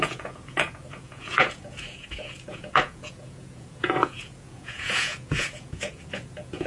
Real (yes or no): no